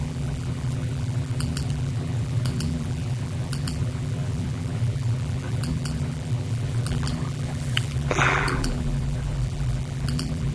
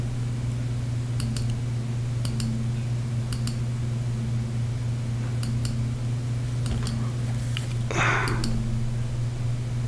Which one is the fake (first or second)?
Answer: first